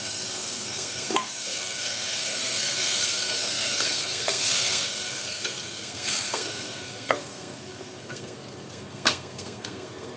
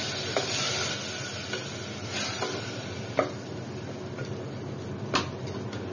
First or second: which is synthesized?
first